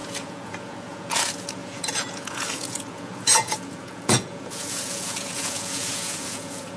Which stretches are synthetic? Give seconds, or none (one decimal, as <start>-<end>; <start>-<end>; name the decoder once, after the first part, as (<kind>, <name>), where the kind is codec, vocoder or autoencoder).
0.0-6.8 (vocoder, Vocos)